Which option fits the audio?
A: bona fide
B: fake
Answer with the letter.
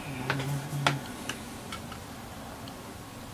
A